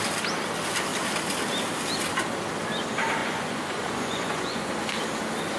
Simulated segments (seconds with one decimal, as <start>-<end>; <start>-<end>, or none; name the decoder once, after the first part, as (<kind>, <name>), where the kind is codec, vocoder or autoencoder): 3.2-4.7 (vocoder, Vocos)